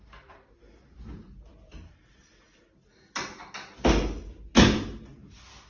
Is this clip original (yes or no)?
yes